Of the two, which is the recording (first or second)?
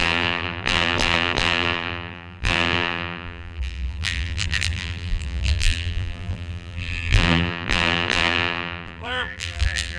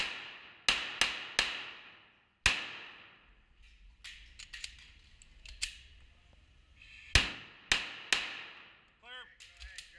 second